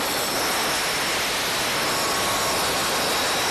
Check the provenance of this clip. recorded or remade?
recorded